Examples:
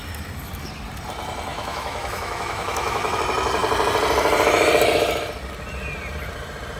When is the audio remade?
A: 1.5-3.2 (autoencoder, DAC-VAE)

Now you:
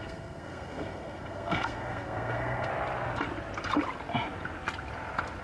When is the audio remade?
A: 0.0-2.7 (codec, SNAC)

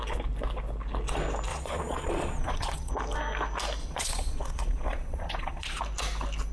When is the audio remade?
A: 1.5-2.9 (vocoder, Vocos); 3.8-5.8

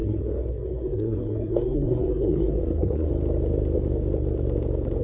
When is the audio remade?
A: 0.0-3.1 (codec, SNAC)